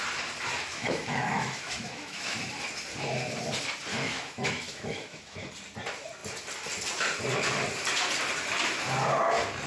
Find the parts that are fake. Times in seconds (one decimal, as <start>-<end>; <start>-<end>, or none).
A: 0.7-2.5; 3.9-5.5